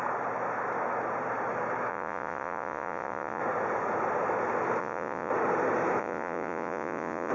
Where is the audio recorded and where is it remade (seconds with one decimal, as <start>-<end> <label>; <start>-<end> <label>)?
0.0-1.9 recorded; 1.9-3.4 remade; 3.4-4.8 recorded; 4.8-5.3 remade; 5.3-6.0 recorded; 6.0-7.3 remade